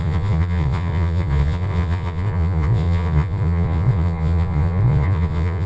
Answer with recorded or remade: remade